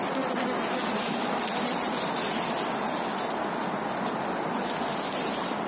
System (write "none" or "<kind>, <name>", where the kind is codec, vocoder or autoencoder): none